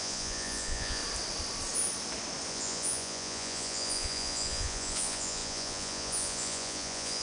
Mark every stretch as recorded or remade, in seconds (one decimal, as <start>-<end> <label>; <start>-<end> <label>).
0.0-1.0 remade; 1.0-2.5 recorded; 2.5-7.2 remade